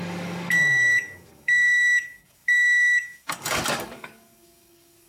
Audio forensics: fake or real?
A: fake